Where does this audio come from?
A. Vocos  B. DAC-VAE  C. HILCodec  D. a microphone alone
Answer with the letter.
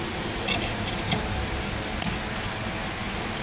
D